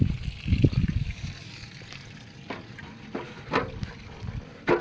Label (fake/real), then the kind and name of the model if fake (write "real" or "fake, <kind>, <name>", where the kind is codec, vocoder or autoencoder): real